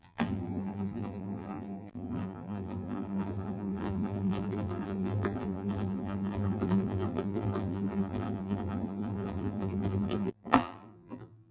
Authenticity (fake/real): fake